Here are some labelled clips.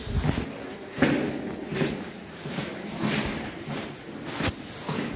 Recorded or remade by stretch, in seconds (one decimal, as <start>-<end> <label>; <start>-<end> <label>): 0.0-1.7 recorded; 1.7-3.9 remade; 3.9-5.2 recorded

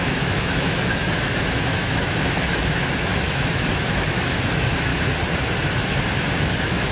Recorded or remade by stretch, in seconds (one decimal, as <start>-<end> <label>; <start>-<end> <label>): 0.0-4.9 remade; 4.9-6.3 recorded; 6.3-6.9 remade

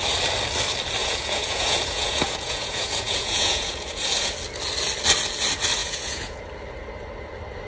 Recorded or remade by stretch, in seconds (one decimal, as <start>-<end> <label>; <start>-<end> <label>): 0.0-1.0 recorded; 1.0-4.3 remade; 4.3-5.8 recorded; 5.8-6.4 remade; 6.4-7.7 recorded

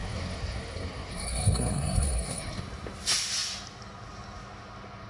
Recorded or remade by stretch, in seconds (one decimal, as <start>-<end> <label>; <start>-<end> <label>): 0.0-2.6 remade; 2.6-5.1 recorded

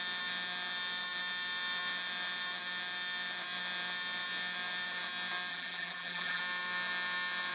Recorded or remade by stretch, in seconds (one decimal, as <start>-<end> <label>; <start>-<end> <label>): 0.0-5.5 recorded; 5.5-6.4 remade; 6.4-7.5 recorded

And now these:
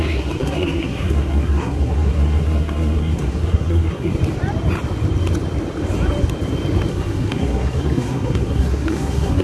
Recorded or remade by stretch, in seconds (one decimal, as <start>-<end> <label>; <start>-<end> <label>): 0.0-4.1 remade; 4.1-6.9 recorded; 6.9-9.4 remade

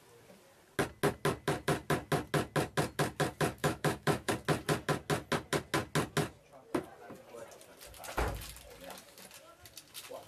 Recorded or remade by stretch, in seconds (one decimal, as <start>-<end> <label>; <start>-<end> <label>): 0.0-3.6 recorded; 3.6-4.3 remade; 4.3-10.3 recorded

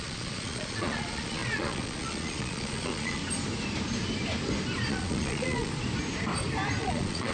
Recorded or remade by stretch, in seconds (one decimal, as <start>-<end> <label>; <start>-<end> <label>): 0.0-3.2 remade; 3.2-4.9 recorded; 4.9-5.7 remade; 5.7-6.8 recorded; 6.8-7.3 remade